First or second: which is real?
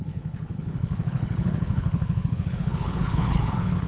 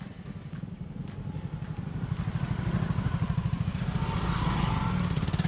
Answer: second